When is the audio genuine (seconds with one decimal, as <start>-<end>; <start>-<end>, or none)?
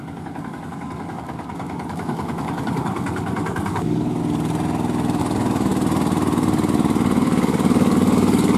4.2-5.2; 5.7-7.2